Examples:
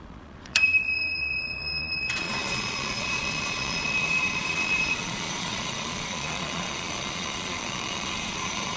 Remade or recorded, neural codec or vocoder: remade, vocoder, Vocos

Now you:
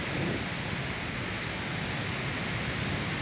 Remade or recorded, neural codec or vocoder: recorded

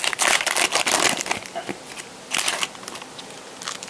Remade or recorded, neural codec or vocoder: recorded